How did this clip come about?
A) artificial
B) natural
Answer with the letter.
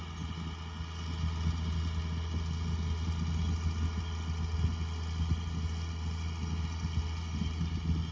B